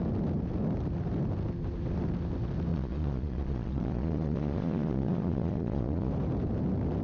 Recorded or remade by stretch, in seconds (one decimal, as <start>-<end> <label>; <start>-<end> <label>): 0.0-2.7 recorded; 2.7-6.1 remade; 6.1-7.0 recorded